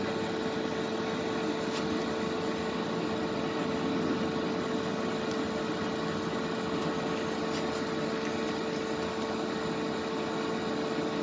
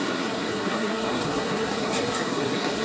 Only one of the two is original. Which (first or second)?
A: first